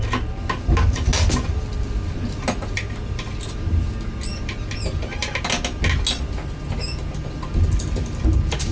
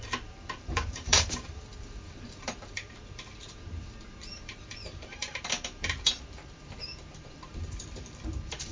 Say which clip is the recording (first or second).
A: first